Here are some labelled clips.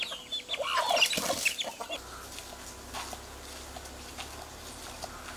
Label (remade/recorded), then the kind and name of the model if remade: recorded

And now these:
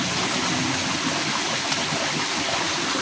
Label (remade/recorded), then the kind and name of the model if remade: recorded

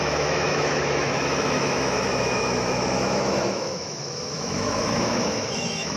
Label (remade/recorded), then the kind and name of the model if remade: remade, autoencoder, DAC-VAE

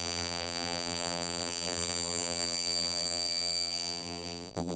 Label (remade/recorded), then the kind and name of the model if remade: remade, vocoder, BigVGAN v2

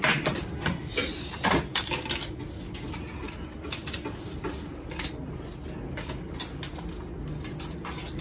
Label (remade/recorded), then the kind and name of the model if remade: recorded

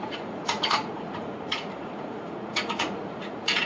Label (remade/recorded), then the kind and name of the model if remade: remade, vocoder, Vocos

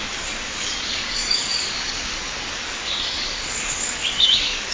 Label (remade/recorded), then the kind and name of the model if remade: remade, codec, DAC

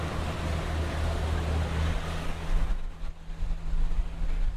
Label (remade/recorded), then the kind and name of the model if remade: recorded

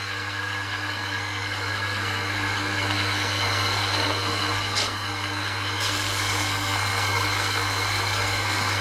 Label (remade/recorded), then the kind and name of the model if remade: remade, codec, SNAC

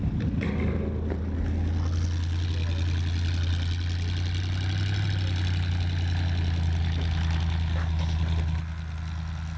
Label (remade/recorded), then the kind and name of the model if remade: recorded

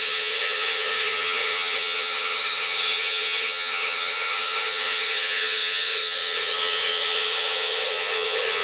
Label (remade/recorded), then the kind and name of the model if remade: remade, vocoder, HiFi-GAN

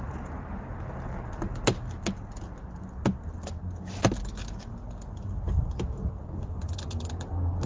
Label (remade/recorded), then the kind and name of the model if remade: recorded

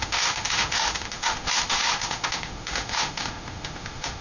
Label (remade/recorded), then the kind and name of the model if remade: remade, autoencoder, DAC-VAE